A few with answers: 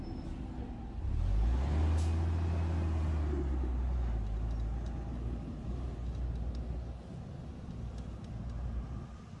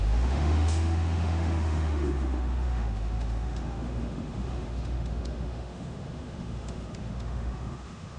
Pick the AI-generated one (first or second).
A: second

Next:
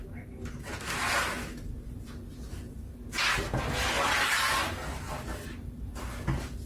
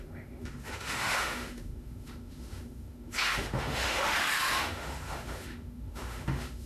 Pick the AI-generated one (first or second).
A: second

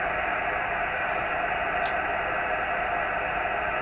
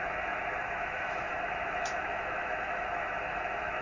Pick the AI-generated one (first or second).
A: second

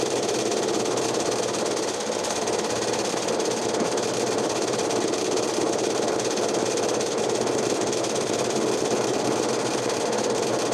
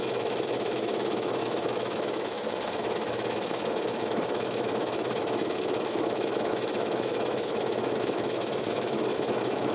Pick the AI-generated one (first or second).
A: second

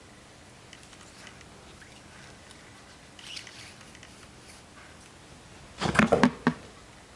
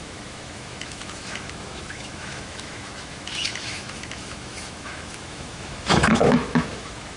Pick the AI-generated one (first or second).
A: second